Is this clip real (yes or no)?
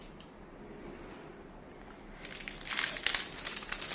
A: yes